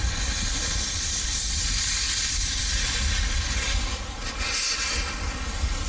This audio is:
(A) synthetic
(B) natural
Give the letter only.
B